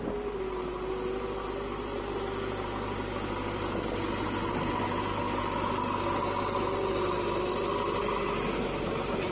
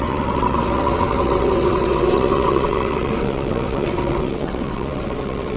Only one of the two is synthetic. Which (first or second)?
second